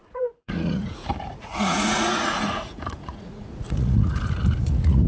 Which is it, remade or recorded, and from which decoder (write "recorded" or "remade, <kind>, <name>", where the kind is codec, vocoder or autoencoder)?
remade, vocoder, Vocos